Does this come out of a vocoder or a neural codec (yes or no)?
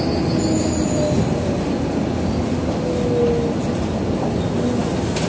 no